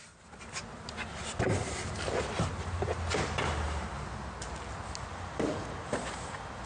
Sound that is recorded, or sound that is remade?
recorded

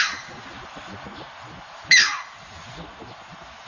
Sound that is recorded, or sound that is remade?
recorded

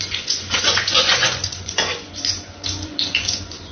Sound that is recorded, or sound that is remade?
remade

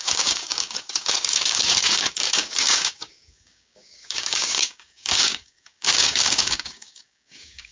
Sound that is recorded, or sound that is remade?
remade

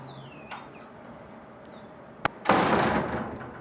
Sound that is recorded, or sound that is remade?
recorded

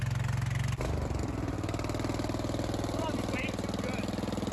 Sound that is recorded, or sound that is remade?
recorded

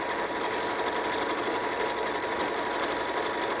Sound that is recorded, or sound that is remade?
recorded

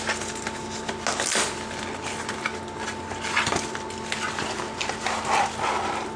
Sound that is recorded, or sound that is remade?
recorded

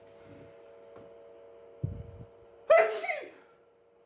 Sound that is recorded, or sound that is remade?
recorded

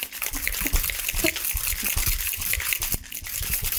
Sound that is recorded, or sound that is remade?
recorded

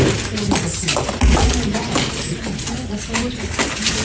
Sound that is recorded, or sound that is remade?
recorded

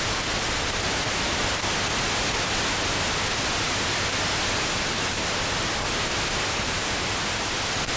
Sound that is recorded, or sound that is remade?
recorded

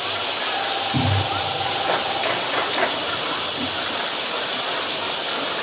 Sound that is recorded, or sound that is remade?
recorded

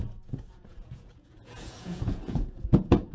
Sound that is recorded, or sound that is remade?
remade